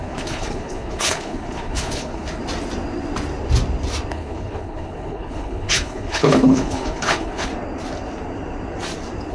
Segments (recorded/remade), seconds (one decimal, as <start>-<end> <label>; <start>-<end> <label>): 0.0-2.4 remade; 2.4-4.1 recorded; 4.1-7.5 remade; 7.5-9.3 recorded